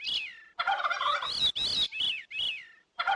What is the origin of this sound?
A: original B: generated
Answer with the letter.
A